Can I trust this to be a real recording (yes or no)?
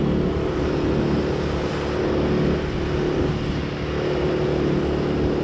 yes